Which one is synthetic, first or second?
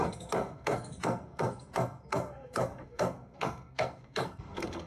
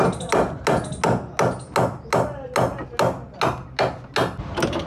first